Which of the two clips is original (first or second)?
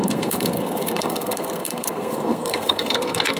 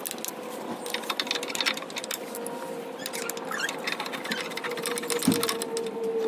second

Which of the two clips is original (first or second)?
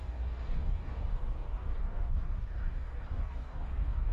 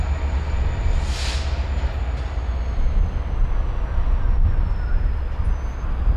second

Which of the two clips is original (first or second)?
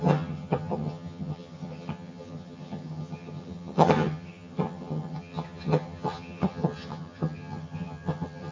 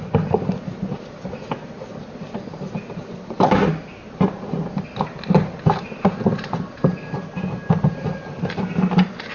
second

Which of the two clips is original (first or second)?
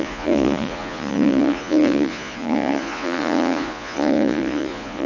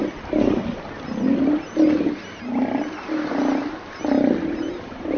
second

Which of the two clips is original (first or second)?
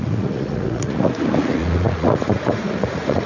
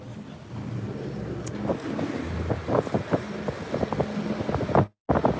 second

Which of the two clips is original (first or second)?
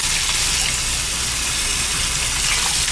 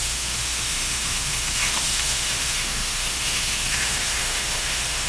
first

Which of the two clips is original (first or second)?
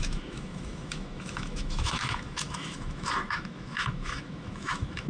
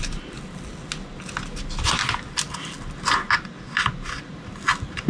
second